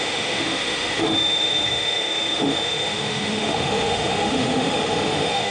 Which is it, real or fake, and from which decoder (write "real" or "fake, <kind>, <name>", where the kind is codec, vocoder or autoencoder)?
fake, autoencoder, DAC-VAE